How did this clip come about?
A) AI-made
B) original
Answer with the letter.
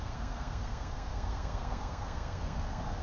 A